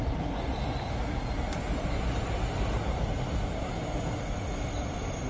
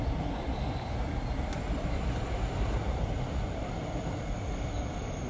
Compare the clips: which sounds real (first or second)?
first